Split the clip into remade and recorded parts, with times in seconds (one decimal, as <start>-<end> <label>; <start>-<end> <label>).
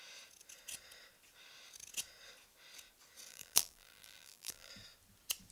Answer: 0.0-3.3 recorded; 3.3-4.7 remade; 4.7-5.5 recorded